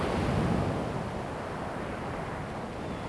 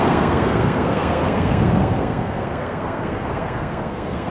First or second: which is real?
first